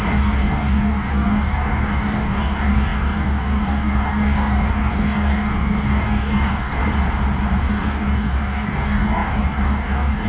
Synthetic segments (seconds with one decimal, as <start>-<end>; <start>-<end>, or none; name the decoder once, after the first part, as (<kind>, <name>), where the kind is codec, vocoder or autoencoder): 0.0-6.8 (codec, DAC); 7.6-10.3